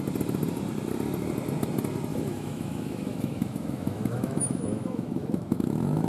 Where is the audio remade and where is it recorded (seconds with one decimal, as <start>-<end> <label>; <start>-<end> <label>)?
0.0-2.1 recorded; 2.1-6.1 remade